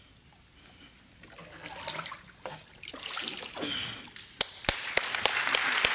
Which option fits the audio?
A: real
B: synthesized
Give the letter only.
A